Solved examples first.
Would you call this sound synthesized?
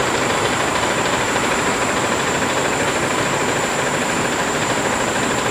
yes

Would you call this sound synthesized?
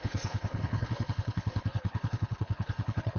yes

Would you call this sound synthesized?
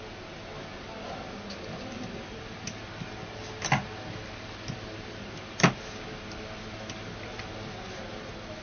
no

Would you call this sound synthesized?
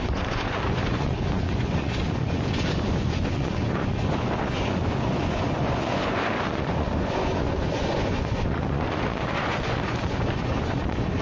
yes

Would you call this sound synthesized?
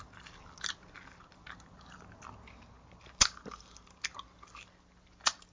no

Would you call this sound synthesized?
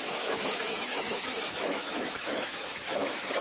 yes